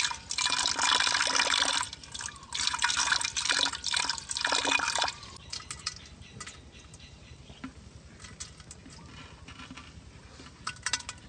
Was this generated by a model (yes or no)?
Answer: no